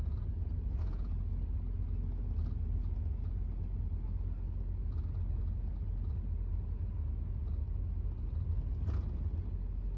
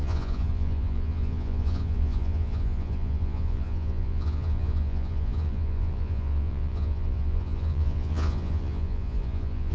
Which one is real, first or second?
first